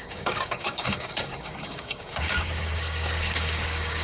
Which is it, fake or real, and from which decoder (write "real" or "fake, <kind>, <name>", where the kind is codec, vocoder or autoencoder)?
fake, codec, DAC